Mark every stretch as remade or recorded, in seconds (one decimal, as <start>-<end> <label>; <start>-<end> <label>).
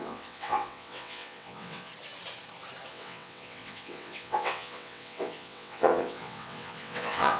0.0-1.9 remade; 1.9-2.9 recorded; 2.9-7.4 remade